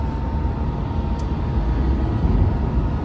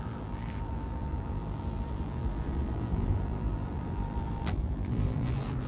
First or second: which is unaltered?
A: first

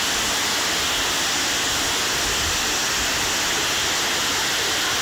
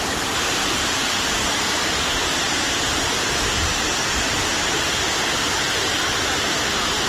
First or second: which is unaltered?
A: first